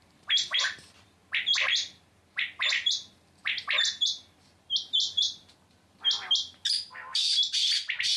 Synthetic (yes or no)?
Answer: no